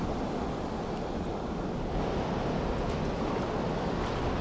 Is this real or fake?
real